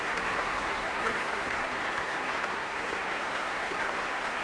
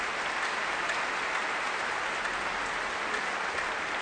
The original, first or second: second